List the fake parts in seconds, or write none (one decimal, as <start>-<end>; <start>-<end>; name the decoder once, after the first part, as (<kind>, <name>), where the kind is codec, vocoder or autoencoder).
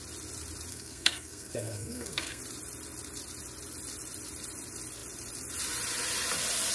0.7-2.4 (codec, SNAC)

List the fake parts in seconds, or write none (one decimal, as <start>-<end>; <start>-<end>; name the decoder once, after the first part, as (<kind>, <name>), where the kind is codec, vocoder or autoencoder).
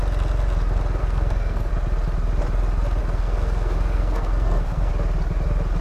1.0-1.7 (codec, SNAC); 3.0-4.9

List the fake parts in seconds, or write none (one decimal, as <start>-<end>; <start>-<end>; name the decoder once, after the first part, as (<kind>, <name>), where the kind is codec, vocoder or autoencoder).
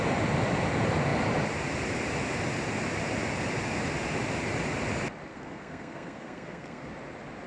5.3-6.9 (codec, SNAC)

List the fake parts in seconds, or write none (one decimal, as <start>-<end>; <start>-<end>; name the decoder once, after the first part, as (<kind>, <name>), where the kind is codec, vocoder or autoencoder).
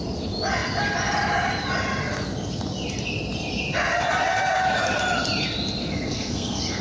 5.8-6.8 (codec, SNAC)